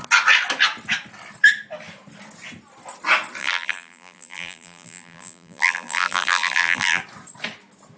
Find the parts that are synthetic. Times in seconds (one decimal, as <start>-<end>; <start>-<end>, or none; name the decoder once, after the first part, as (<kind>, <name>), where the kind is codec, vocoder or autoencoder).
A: 3.4-7.0 (vocoder, BigVGAN v2)